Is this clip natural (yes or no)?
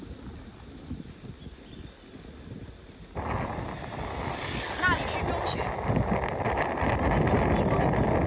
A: yes